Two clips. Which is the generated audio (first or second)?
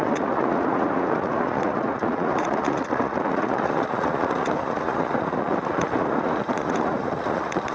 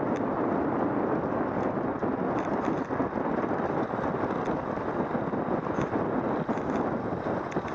first